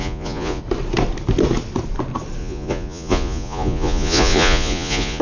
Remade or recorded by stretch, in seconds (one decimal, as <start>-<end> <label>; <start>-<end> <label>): 0.0-0.6 remade; 0.6-2.4 recorded; 2.4-5.2 remade